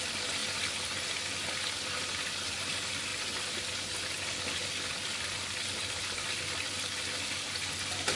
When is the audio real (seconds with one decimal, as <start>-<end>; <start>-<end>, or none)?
0.0-8.2